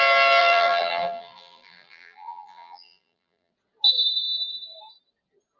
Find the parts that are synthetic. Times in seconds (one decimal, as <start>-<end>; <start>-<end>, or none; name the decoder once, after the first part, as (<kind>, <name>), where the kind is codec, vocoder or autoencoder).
0.4-3.5 (vocoder, BigVGAN v2)